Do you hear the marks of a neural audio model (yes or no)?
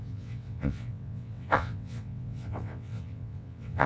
yes